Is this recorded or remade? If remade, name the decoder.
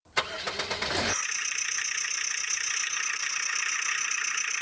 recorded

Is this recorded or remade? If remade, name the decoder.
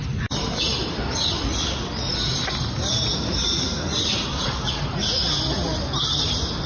recorded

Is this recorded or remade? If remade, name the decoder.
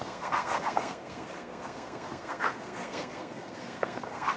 remade, codec, SNAC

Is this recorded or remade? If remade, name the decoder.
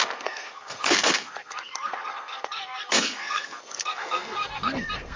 remade, codec, SNAC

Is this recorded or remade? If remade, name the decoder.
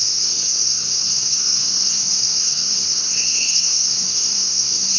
remade, codec, SNAC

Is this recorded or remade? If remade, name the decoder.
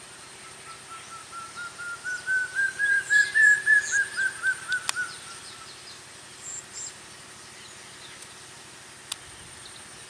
recorded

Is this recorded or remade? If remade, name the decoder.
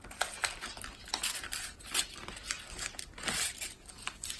recorded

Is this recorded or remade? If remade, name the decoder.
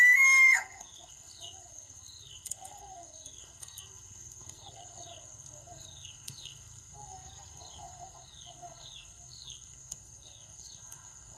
remade, codec, SNAC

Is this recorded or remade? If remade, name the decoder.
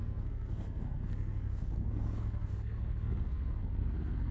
remade, codec, SNAC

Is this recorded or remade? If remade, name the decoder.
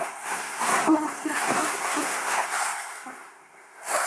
remade, codec, SNAC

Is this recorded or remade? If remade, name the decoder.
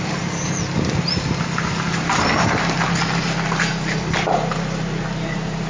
recorded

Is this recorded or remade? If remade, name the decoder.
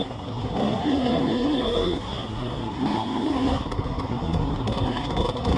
remade, codec, SNAC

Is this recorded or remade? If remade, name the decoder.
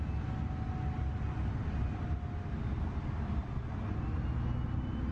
recorded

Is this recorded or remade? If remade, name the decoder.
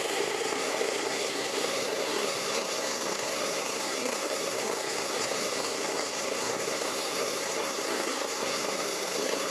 remade, codec, SNAC